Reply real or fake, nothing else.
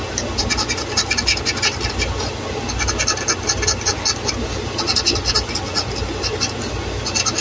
real